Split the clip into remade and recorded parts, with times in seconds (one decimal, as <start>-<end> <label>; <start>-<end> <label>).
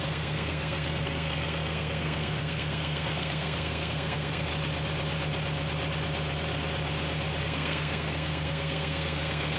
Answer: 0.0-4.5 remade; 4.5-7.4 recorded; 7.4-9.6 remade